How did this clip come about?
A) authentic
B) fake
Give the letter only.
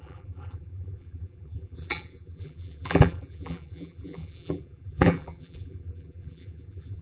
B